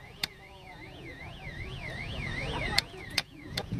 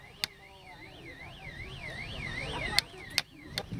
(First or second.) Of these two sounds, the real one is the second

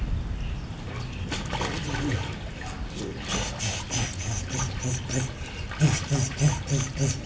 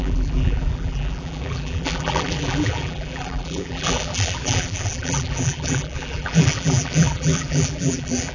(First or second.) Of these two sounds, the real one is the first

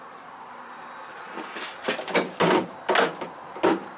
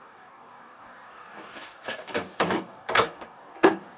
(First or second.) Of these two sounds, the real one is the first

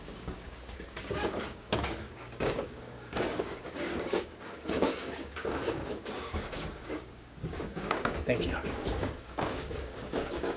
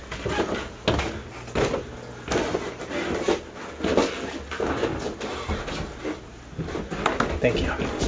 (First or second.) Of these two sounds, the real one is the second